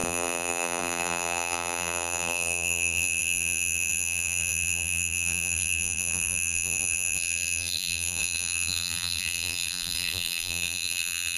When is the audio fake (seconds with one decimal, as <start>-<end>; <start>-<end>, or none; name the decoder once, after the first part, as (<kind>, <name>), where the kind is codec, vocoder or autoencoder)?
0.0-11.4 (vocoder, BigVGAN v2)